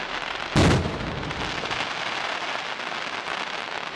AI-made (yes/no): no